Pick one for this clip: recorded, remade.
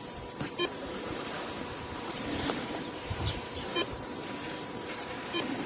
remade